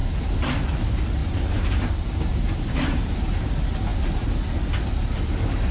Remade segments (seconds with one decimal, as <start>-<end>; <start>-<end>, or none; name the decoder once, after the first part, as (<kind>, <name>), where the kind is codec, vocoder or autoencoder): 0.0-0.5 (vocoder, BigVGAN v2); 1.2-3.3